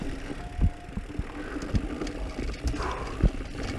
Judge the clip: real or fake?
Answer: real